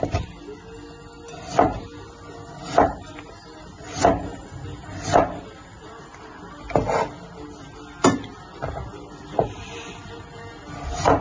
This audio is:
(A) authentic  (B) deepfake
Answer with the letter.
A